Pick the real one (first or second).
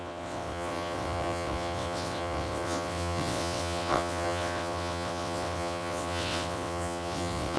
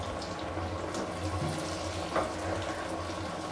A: second